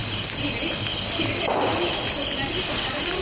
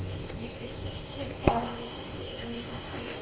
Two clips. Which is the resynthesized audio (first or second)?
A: second